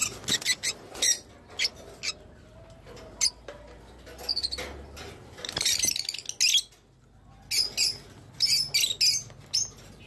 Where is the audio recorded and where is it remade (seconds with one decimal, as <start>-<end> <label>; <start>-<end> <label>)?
0.0-10.1 recorded